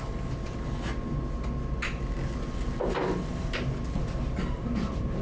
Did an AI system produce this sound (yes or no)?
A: no